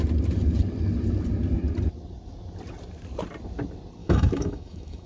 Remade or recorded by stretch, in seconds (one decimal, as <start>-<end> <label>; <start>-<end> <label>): 0.0-4.0 recorded; 4.0-5.1 remade